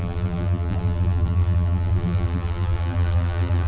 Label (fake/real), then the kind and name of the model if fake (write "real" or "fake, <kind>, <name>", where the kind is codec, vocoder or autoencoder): fake, vocoder, BigVGAN v2